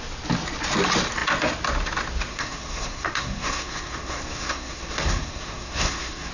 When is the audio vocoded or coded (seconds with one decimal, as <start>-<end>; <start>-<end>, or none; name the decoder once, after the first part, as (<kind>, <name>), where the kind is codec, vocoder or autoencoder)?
2.3-6.3 (codec, SNAC)